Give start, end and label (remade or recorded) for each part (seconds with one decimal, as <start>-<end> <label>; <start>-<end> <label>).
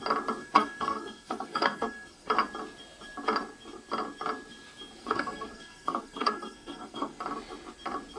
0.0-0.4 recorded; 0.4-2.3 remade; 2.3-5.0 recorded; 5.0-7.2 remade; 7.2-8.2 recorded